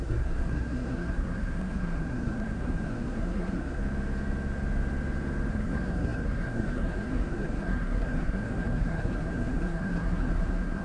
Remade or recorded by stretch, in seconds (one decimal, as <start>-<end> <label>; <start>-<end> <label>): 0.0-3.8 remade; 3.8-5.5 recorded; 5.5-10.8 remade